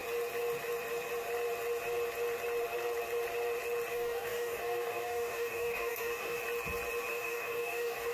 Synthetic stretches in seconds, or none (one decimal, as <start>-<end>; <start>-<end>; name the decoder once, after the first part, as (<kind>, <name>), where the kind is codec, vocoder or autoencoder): 3.9-6.4 (codec, DAC); 7.1-8.1